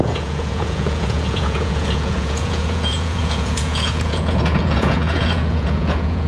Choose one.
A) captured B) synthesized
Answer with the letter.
B